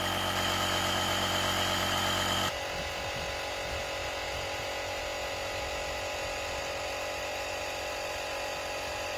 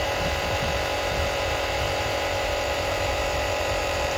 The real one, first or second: first